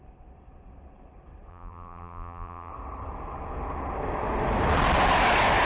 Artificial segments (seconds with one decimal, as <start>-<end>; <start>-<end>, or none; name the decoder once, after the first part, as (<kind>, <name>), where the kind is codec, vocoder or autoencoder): 1.5-2.7 (vocoder, BigVGAN v2)